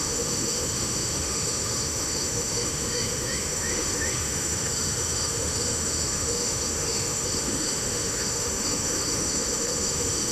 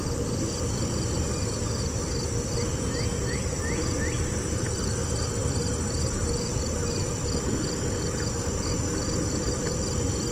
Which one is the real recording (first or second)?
second